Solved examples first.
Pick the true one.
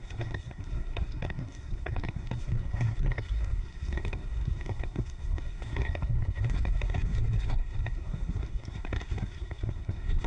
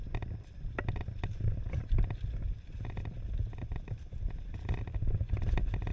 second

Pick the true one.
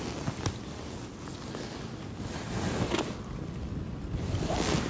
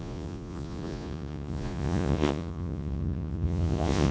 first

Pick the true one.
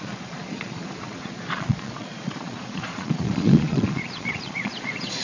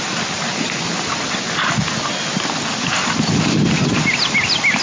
second